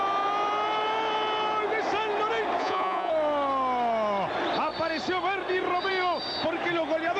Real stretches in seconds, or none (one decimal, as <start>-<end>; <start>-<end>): 0.0-2.6; 3.1-7.2